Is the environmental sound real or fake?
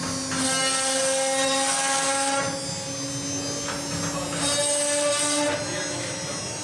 real